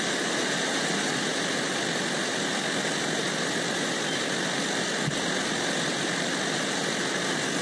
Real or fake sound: real